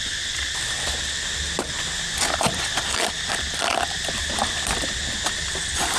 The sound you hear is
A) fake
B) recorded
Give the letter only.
A